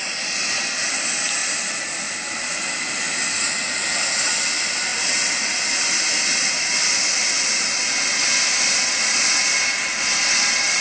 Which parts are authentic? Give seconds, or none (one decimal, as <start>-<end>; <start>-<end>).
0.0-10.8